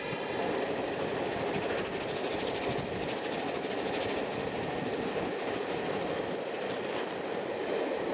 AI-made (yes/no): no